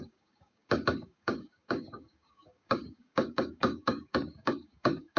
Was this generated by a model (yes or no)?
yes